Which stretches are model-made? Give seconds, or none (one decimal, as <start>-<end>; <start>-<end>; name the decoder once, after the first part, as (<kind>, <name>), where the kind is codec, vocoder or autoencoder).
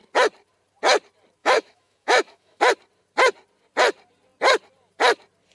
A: 1.4-2.6 (autoencoder, DAC-VAE)